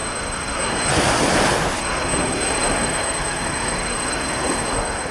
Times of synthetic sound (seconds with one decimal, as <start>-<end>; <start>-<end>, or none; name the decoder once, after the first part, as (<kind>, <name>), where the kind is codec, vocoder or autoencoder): 0.0-0.9 (codec, SNAC); 1.8-5.1